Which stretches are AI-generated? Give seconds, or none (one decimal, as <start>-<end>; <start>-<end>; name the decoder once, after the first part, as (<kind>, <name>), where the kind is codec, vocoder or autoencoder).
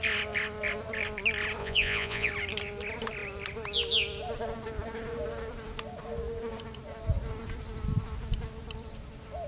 1.6-2.3 (vocoder, Vocos)